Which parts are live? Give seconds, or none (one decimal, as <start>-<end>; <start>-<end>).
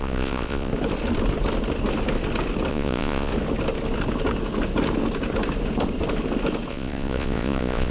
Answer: 0.7-2.7; 3.3-6.7